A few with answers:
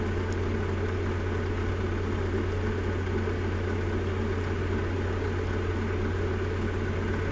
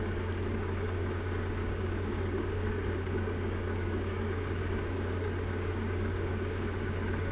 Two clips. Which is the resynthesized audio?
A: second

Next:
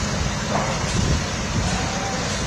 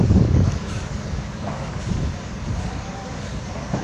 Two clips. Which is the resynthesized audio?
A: second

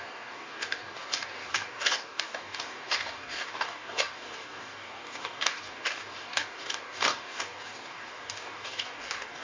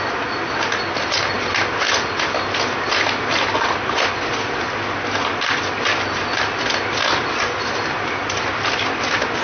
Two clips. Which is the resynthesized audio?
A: first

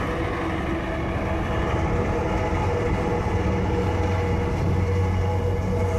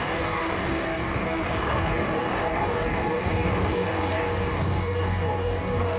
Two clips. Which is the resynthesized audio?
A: second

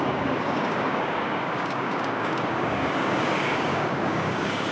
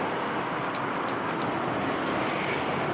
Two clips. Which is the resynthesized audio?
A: first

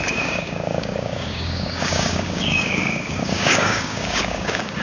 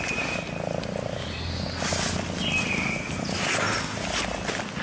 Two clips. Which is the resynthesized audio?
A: first